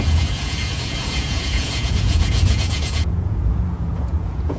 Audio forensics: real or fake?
fake